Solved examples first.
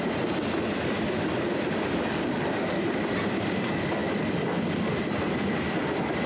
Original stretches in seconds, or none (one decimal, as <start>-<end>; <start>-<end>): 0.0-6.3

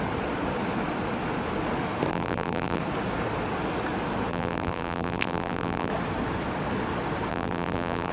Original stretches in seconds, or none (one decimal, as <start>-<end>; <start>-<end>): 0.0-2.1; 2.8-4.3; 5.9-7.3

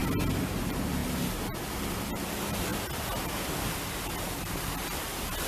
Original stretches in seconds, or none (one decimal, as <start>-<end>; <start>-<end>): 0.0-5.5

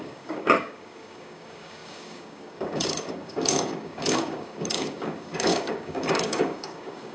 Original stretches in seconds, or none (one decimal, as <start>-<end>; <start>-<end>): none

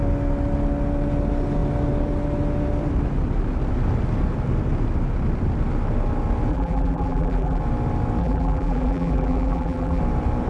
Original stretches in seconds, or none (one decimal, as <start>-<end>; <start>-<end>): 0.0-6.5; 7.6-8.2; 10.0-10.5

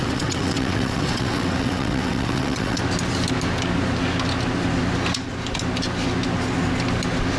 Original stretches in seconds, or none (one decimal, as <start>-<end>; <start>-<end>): 2.8-7.4